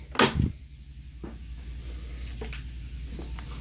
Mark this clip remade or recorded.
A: recorded